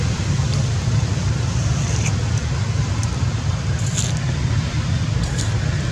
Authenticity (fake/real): fake